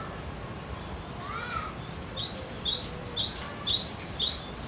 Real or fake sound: real